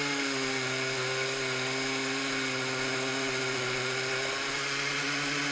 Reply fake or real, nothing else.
real